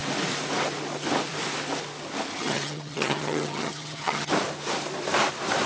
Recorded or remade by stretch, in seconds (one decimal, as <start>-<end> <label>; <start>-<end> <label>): 0.0-2.3 recorded; 2.3-4.3 remade; 4.3-5.7 recorded